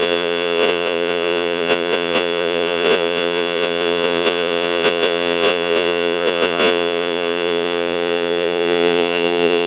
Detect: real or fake fake